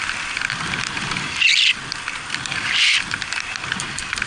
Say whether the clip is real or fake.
real